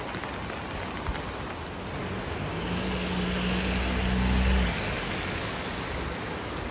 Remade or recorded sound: recorded